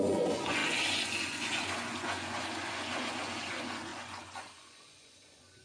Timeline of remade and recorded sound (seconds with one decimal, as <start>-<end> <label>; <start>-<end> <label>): 0.0-5.6 remade